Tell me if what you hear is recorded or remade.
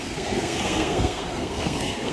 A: remade